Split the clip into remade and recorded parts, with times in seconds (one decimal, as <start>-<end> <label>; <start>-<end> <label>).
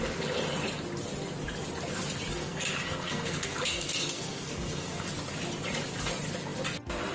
0.0-2.4 recorded; 2.4-5.1 remade; 5.1-7.1 recorded